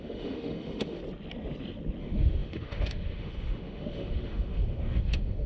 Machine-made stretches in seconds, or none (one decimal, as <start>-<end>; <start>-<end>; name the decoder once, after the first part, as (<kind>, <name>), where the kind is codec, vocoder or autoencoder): 0.0-1.0 (autoencoder, DAC-VAE); 2.0-5.5